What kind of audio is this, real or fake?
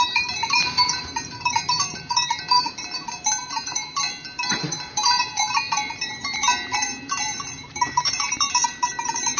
fake